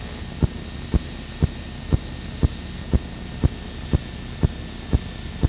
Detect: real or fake real